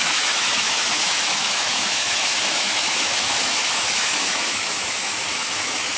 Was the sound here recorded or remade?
remade